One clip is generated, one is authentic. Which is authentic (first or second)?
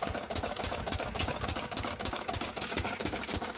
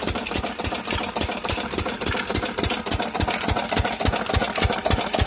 second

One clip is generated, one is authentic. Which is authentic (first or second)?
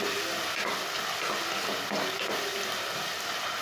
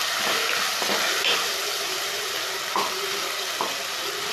first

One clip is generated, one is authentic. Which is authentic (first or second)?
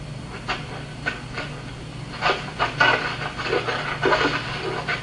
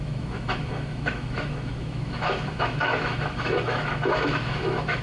first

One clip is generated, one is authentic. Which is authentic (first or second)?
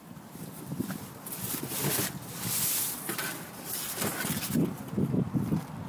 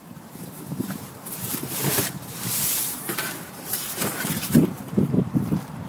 first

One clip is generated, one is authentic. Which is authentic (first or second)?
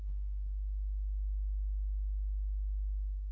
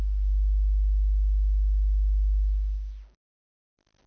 second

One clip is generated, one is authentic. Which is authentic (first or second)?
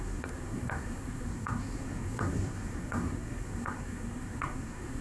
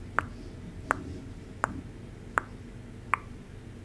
second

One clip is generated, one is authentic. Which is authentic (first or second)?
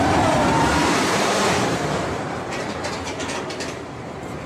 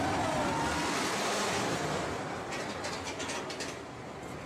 second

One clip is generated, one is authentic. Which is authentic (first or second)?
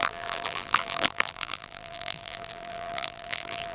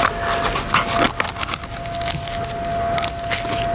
second